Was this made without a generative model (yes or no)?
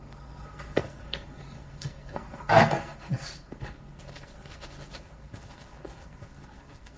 no